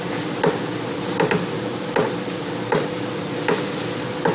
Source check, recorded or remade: recorded